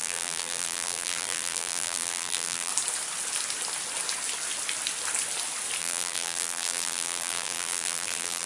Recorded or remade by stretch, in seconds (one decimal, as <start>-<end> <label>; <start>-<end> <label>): 0.0-2.7 remade; 2.7-5.8 recorded; 5.8-8.5 remade